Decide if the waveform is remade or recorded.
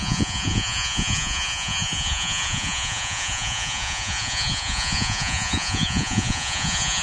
remade